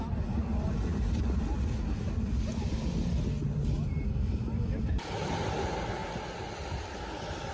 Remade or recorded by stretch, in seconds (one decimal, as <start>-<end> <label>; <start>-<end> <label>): 0.0-7.5 recorded